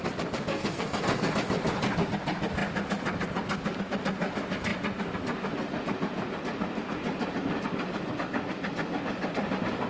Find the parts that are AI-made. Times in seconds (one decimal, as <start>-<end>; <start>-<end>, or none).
0.5-1.3